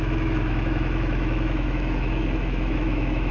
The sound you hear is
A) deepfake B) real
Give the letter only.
A